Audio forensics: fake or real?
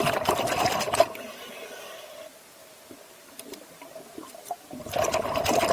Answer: real